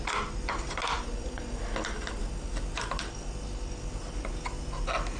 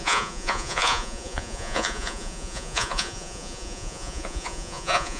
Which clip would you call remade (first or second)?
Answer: second